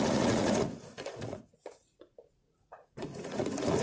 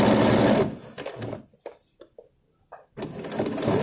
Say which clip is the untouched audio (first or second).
second